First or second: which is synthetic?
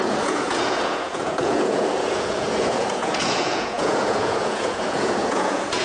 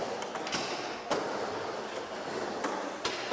first